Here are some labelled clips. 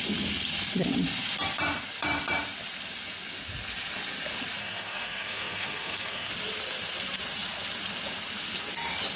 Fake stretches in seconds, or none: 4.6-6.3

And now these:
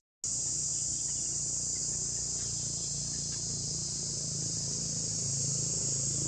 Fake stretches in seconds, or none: none

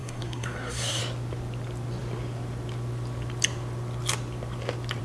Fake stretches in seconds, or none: 0.0-1.0

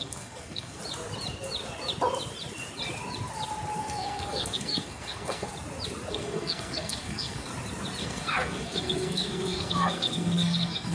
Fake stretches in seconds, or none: 0.0-0.8; 3.8-5.5; 6.1-7.5; 8.0-10.9

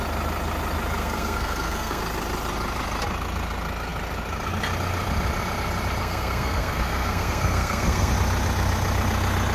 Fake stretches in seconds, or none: 1.0-2.0; 6.0-8.1

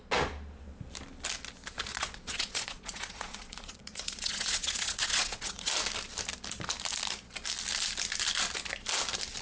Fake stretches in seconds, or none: 1.9-5.7